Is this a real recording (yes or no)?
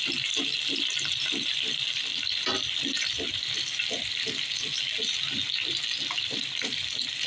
yes